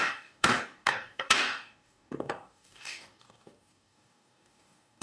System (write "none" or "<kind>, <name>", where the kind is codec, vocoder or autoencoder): codec, DAC